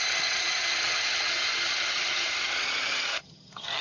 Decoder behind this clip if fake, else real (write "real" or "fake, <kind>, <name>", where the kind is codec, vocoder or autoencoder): fake, vocoder, HiFi-GAN